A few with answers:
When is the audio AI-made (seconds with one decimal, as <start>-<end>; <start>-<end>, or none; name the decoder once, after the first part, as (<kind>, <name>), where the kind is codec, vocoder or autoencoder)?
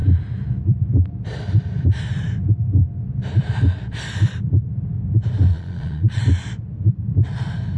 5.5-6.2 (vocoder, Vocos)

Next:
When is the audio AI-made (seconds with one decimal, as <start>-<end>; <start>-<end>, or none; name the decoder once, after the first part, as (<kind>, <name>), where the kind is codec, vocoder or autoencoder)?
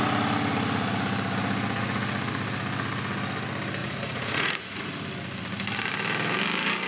3.8-4.9 (vocoder, Vocos)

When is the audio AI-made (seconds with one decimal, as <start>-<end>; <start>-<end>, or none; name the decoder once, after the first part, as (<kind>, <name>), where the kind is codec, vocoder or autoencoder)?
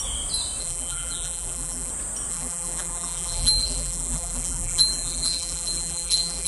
0.6-1.9 (vocoder, BigVGAN v2); 2.3-6.5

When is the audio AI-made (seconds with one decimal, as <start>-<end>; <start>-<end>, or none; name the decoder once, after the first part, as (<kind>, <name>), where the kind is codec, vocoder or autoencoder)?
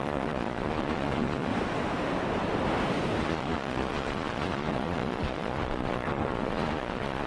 0.0-1.5 (vocoder, Vocos); 3.2-7.3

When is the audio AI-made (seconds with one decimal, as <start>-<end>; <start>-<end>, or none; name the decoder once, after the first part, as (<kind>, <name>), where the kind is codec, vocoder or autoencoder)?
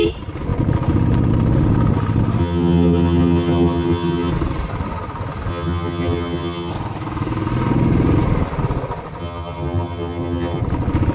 2.4-4.3 (vocoder, HiFi-GAN); 5.5-6.7; 9.2-10.6